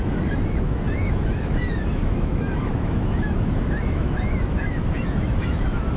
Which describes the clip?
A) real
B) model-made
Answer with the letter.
B